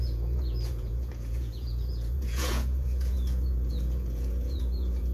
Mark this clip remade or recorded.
remade